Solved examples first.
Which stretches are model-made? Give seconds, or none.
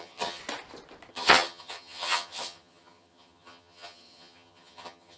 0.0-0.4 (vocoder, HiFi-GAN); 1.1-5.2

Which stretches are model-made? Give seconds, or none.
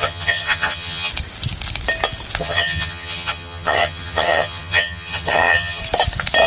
0.0-1.1 (vocoder, HiFi-GAN); 2.4-5.8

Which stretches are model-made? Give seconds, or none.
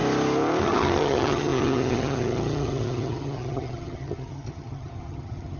0.6-5.6 (vocoder, HiFi-GAN)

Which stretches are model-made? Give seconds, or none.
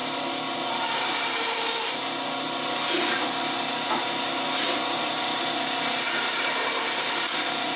none